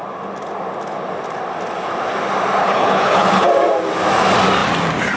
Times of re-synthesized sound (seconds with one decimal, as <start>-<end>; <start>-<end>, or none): 2.6-3.5